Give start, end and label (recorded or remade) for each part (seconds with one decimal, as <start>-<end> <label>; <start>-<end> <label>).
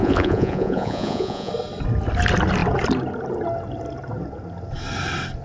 0.0-1.5 remade; 1.5-5.4 recorded